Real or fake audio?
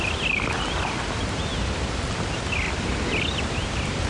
fake